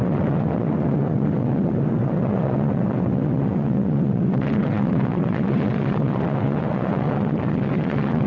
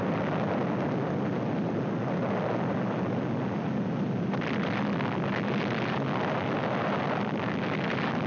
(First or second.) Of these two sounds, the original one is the second